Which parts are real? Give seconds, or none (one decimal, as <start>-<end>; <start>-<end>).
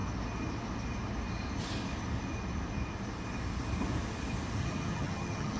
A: 0.0-4.6